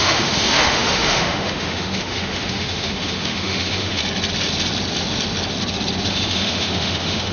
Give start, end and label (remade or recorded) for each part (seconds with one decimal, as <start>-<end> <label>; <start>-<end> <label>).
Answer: 0.0-4.0 remade; 4.0-6.1 recorded; 6.1-7.3 remade